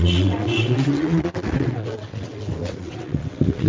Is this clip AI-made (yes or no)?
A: yes